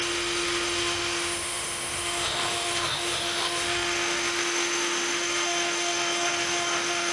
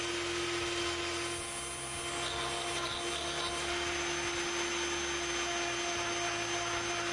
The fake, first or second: first